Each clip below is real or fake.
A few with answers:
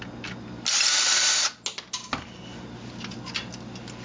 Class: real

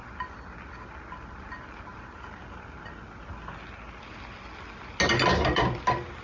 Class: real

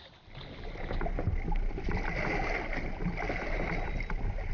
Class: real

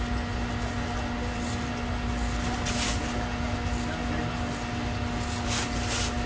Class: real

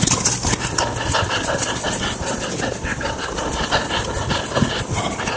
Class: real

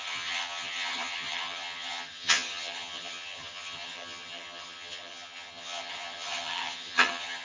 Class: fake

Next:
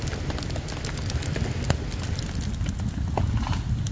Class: real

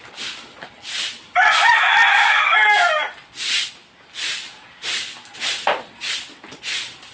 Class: real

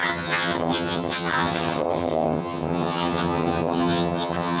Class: fake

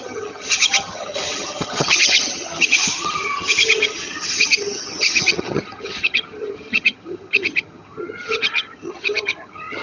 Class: fake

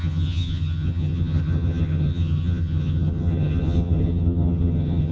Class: fake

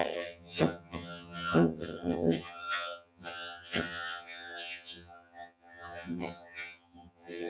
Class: fake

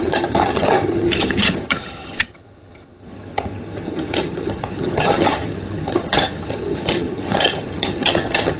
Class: fake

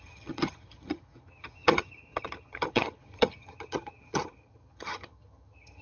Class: fake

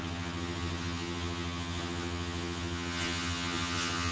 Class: fake